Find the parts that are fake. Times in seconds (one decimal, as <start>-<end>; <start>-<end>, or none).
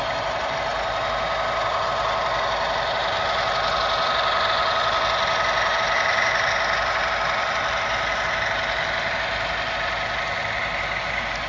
none